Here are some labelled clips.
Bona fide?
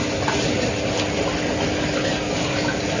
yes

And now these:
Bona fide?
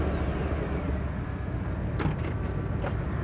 yes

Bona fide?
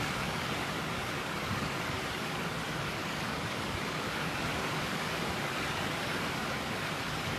no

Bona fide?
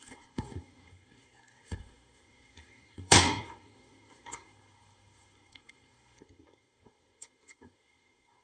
no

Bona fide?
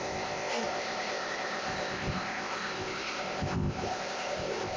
no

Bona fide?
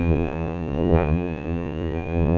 no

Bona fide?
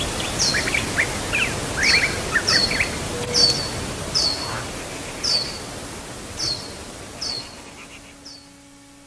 yes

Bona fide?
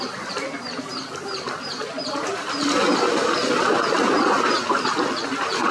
yes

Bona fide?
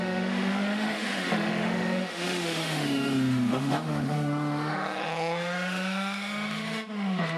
no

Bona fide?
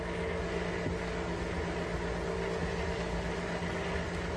yes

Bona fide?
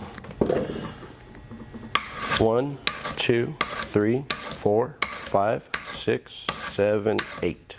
yes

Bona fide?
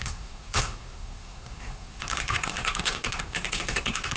no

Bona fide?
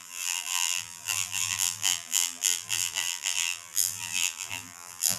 no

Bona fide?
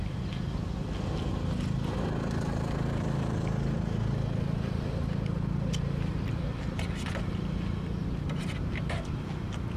yes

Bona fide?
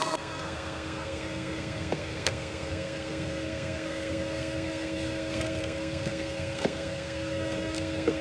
no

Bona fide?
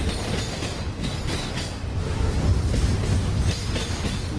yes